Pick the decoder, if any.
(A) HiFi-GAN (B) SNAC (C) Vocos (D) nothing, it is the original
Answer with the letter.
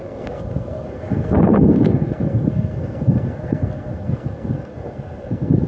B